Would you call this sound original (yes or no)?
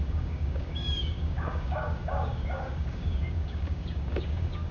no